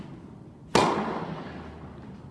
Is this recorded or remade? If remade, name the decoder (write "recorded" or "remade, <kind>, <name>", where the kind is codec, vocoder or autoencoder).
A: recorded